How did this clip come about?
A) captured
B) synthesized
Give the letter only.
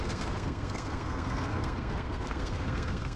B